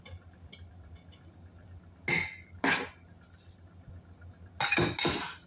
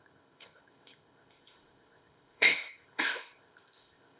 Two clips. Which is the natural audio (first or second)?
first